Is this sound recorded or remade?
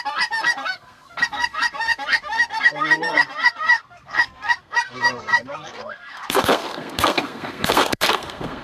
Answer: remade